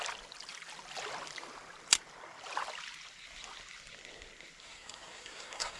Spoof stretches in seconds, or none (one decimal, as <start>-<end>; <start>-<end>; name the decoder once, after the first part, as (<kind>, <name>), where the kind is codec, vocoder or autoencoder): 4.6-5.8 (codec, SNAC)